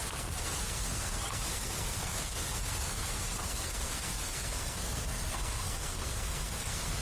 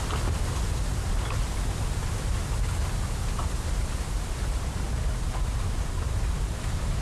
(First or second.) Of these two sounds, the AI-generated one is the first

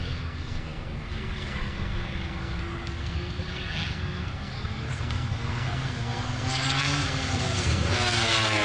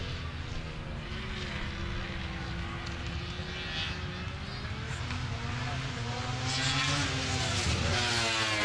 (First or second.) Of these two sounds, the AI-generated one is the first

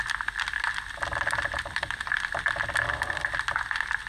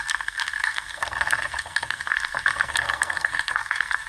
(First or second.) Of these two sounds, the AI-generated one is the second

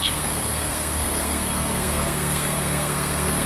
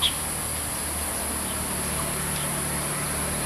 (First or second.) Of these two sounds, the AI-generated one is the first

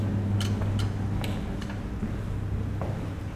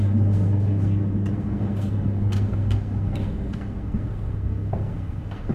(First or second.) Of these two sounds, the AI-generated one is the second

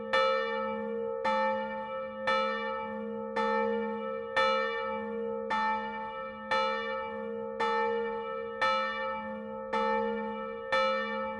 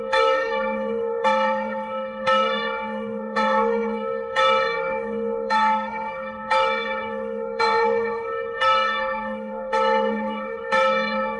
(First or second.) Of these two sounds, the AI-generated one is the second